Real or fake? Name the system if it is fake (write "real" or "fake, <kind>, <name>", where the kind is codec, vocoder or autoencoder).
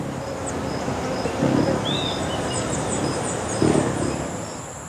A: real